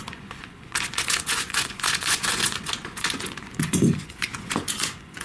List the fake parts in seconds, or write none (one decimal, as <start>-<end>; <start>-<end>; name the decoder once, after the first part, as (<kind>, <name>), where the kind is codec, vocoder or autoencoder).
0.0-5.2 (vocoder, Vocos)